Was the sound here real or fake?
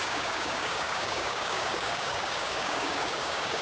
fake